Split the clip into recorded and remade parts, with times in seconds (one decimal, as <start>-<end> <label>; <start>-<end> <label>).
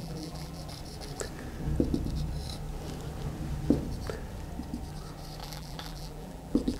0.0-0.6 remade; 0.6-5.4 recorded; 5.4-6.8 remade